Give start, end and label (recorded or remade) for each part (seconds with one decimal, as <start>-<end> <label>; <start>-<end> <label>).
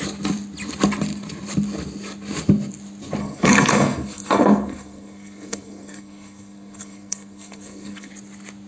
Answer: 0.0-3.2 recorded; 3.2-8.1 remade; 8.1-8.7 recorded